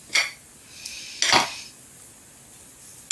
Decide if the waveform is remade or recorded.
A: recorded